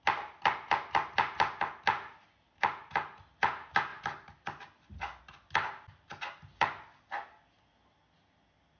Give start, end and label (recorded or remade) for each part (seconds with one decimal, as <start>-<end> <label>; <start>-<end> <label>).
0.0-8.8 recorded